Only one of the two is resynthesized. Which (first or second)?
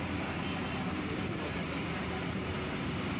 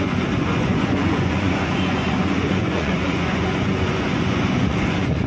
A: second